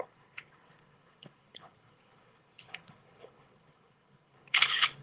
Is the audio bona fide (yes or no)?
no